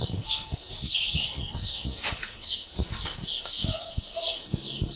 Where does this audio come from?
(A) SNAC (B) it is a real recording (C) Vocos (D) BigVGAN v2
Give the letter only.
A